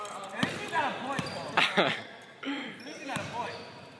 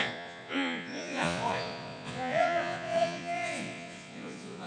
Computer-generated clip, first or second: second